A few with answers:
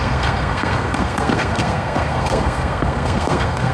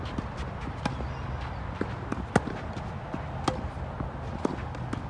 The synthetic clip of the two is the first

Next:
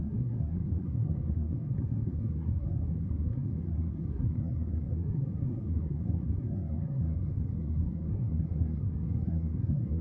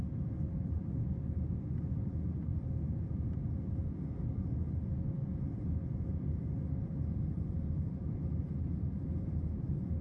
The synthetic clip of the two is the first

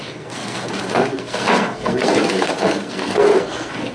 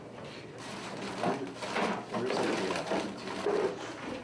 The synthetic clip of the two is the first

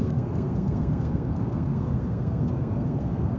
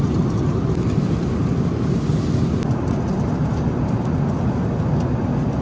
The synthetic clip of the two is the first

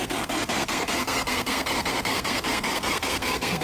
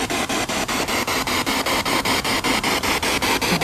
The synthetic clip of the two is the first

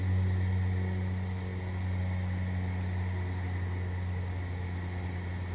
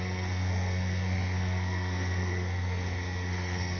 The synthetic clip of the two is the second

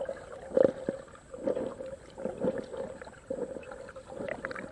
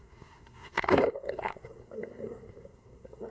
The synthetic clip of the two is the second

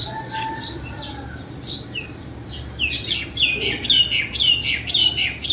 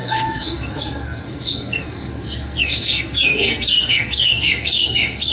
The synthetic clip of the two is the second